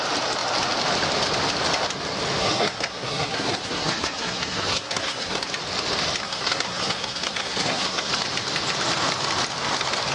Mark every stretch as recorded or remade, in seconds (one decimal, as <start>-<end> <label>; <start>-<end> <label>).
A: 0.0-2.4 recorded; 2.4-5.5 remade; 5.5-6.2 recorded; 6.2-8.1 remade; 8.1-10.1 recorded